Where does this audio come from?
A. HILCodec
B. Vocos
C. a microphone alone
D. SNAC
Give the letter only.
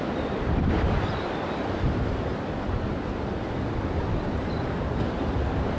C